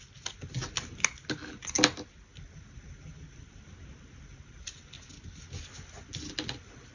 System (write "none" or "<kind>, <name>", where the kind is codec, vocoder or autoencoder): none